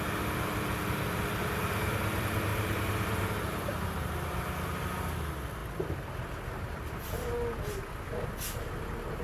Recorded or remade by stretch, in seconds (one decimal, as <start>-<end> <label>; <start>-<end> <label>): 0.0-2.5 recorded; 2.5-4.5 remade; 4.5-9.2 recorded